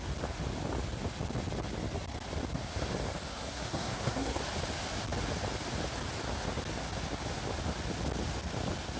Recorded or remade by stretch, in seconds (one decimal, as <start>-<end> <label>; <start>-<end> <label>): 0.0-3.3 recorded; 3.3-4.4 remade; 4.4-9.0 recorded